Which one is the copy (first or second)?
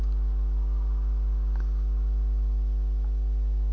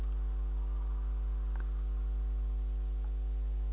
second